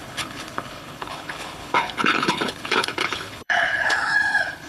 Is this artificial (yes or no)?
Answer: yes